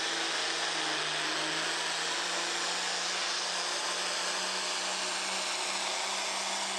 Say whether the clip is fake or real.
real